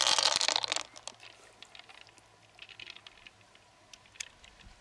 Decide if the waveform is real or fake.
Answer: real